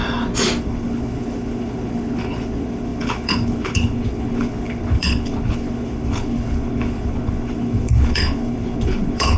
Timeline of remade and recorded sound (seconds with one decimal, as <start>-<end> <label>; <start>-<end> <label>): 0.0-0.6 recorded; 0.6-9.4 remade